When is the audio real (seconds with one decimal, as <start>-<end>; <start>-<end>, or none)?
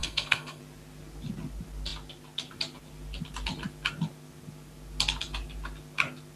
0.6-6.4